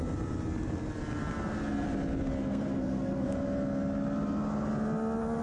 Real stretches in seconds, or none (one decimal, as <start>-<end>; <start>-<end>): 0.0-2.4; 3.3-5.4

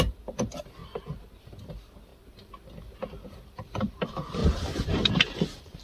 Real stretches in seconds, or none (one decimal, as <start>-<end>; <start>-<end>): 0.8-1.4; 2.1-3.0; 4.4-5.1

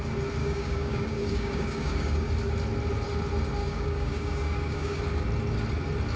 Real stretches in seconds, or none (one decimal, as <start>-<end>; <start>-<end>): 0.0-0.4; 2.3-3.6; 5.0-6.2